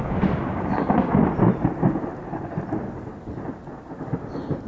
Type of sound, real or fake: real